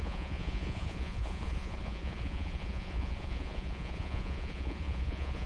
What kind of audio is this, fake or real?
fake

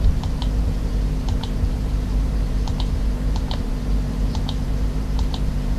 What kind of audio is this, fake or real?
fake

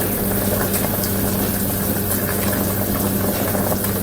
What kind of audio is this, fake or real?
real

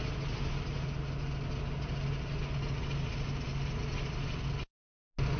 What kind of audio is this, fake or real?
real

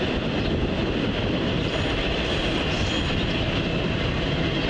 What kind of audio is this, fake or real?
real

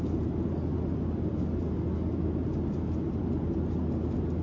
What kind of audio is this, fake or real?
real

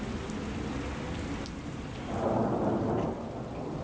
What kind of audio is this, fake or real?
real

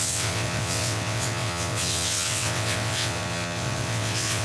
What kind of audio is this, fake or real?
fake